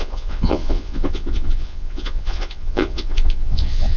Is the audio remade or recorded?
remade